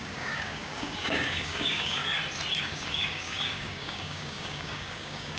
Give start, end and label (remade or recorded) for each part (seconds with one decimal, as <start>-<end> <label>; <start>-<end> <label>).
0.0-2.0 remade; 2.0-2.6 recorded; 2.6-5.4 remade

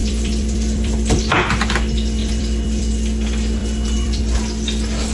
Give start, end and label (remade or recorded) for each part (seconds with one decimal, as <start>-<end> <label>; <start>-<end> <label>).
0.0-1.3 remade; 1.3-2.2 recorded; 2.2-2.9 remade; 2.9-3.6 recorded; 3.6-4.2 remade; 4.2-5.1 recorded

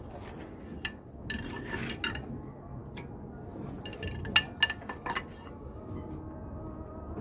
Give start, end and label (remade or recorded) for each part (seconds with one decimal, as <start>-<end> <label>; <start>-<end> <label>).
0.0-7.2 recorded

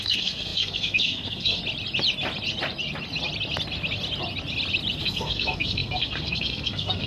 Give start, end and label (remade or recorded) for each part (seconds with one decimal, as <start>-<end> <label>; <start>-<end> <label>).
0.0-1.6 remade; 1.6-5.0 recorded; 5.0-7.1 remade